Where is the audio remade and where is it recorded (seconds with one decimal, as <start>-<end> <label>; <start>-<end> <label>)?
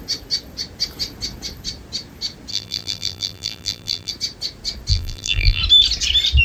0.0-2.5 recorded; 2.5-4.1 remade; 4.1-4.9 recorded; 4.9-5.6 remade; 5.6-6.4 recorded